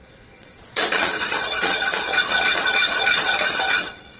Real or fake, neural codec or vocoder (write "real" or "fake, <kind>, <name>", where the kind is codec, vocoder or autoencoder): fake, vocoder, Vocos